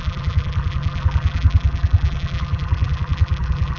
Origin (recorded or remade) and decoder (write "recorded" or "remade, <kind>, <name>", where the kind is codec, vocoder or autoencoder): remade, vocoder, BigVGAN v2